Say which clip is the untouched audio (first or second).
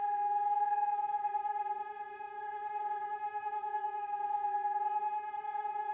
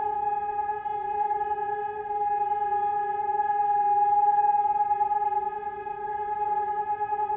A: second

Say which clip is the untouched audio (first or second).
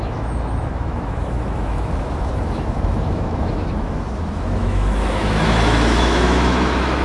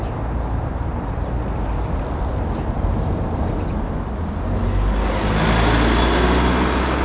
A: second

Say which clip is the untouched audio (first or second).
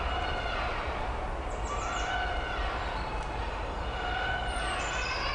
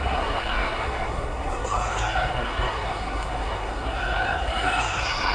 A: first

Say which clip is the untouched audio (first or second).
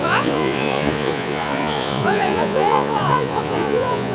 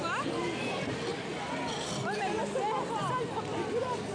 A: second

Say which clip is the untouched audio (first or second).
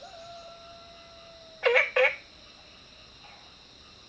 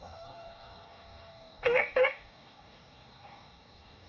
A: first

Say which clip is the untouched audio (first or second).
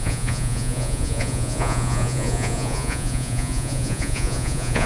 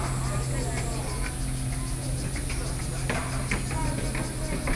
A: second